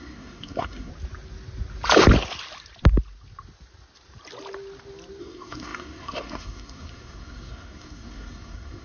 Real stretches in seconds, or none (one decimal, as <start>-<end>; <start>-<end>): 0.9-5.2